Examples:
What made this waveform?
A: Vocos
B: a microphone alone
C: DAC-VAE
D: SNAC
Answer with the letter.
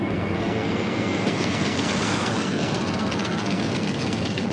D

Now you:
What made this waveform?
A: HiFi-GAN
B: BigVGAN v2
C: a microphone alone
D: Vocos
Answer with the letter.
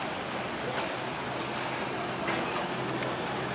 C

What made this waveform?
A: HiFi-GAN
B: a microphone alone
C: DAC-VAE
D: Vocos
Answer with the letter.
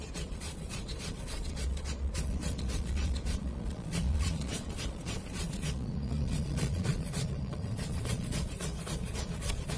D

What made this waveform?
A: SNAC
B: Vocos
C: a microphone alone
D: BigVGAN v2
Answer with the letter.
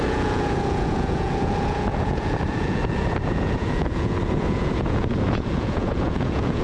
B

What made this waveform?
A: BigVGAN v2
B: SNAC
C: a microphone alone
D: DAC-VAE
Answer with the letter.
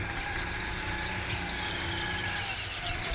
C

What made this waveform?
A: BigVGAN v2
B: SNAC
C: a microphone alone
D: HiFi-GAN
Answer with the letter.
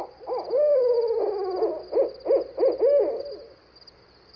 C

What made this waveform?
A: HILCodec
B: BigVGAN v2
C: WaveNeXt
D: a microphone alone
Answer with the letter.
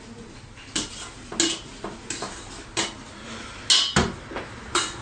D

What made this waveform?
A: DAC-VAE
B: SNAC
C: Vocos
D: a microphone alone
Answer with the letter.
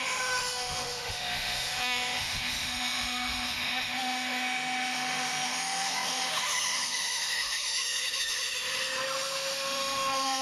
A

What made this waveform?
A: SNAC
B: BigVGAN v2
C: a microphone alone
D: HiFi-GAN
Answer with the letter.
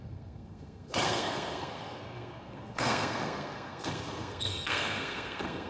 A